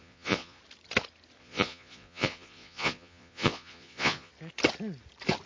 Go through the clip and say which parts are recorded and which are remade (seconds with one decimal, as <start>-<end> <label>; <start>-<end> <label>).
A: 0.0-0.6 remade; 0.6-1.4 recorded; 1.4-4.3 remade; 4.3-5.5 recorded